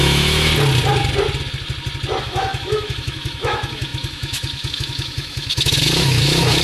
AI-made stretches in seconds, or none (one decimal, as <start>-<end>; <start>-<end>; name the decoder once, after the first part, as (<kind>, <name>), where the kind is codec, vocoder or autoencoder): 0.0-0.5 (autoencoder, DAC-VAE); 2.2-6.6